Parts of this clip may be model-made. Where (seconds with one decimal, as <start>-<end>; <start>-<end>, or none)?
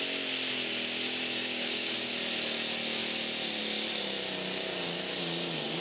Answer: 1.4-2.1